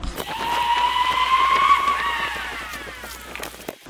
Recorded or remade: remade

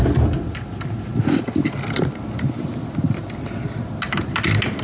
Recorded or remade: recorded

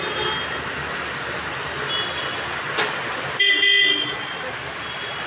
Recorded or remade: recorded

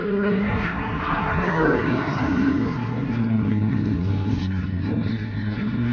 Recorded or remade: remade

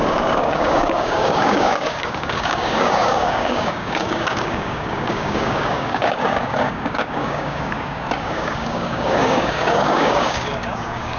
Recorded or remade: remade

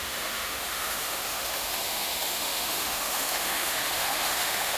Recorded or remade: remade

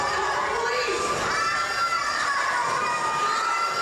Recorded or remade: recorded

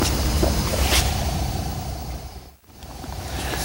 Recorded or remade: remade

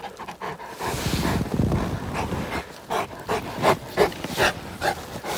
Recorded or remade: recorded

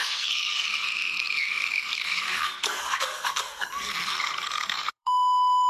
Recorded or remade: remade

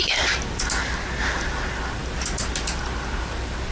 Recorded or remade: recorded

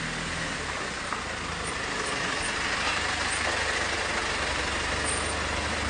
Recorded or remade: recorded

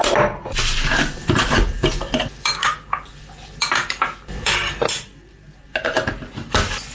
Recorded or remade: recorded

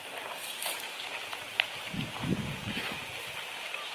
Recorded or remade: remade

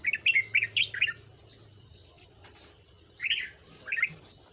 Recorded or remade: recorded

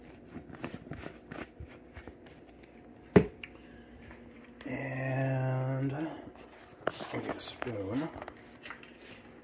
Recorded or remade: recorded